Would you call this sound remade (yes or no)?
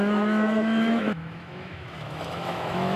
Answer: yes